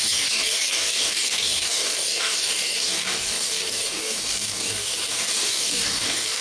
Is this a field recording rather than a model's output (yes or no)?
no